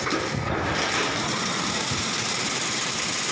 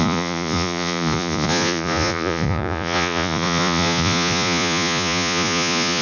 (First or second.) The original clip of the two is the first